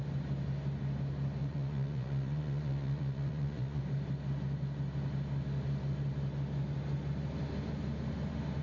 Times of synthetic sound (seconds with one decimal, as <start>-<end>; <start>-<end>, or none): 1.4-3.8